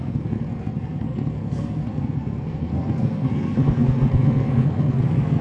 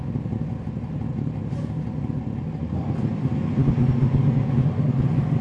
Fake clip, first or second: first